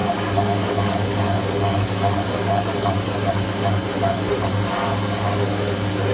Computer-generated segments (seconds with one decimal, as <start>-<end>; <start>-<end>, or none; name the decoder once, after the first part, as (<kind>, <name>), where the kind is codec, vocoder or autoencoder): 0.0-3.7 (codec, DAC)